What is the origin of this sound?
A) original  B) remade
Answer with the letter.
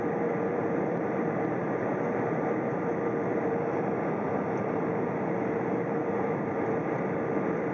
B